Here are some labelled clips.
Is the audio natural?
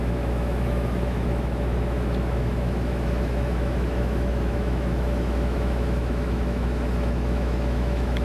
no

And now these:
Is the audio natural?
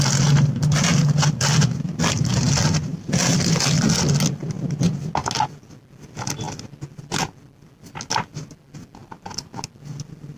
yes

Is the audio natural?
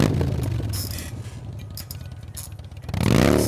yes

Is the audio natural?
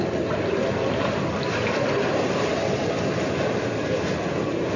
yes